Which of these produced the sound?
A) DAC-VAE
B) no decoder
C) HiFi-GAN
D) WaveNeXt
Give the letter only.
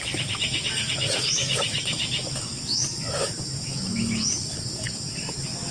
A